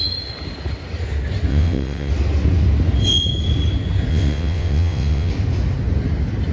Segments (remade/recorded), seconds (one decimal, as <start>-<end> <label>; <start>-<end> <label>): 0.0-1.5 recorded; 1.5-2.1 remade; 2.1-4.1 recorded; 4.1-5.3 remade; 5.3-6.5 recorded